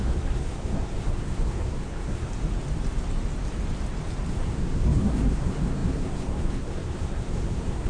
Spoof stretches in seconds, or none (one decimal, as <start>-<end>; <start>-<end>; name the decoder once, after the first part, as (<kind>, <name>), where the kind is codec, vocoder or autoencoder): 0.0-2.3 (codec, SNAC); 4.3-7.9

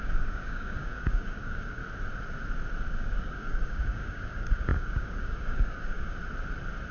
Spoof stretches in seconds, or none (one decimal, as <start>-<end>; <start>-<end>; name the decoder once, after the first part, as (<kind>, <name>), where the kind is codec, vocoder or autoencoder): 0.0-1.8 (codec, DAC); 2.9-6.2

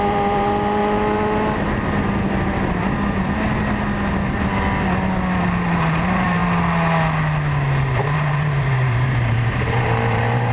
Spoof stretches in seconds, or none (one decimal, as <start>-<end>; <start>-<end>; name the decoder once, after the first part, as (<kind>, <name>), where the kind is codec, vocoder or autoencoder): 0.0-0.8 (vocoder, BigVGAN v2); 5.4-6.4; 8.2-10.5

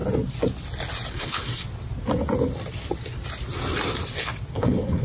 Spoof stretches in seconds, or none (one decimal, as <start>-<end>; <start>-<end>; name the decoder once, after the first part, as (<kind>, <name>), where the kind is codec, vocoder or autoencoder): 1.1-1.5 (codec, HILCodec); 4.5-5.0

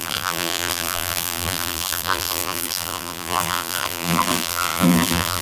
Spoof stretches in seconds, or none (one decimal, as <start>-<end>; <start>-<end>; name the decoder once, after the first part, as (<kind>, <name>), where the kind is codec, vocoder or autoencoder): 0.0-5.4 (vocoder, BigVGAN v2)

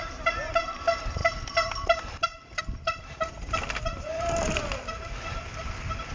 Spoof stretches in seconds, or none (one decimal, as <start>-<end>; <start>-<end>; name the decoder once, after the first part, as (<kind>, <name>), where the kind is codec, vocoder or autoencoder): 0.0-6.1 (vocoder, BigVGAN v2)

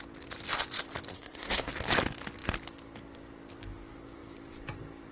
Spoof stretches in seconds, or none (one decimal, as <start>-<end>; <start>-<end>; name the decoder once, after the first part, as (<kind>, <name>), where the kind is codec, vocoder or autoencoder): 1.1-1.7 (codec, SNAC)